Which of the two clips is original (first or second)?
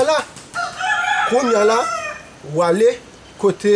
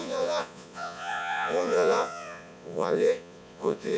first